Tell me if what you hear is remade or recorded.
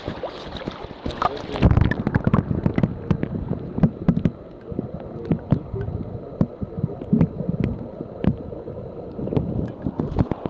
recorded